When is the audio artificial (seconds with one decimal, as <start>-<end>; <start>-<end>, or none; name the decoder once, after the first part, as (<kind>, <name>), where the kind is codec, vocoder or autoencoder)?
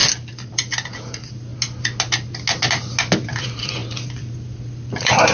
0.5-1.5 (vocoder, BigVGAN v2); 3.4-5.3